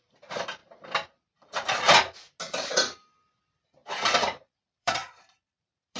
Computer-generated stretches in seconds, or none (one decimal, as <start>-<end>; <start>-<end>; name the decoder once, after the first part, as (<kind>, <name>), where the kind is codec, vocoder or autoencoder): 0.0-0.6 (vocoder, BigVGAN v2); 2.7-3.8; 4.8-6.0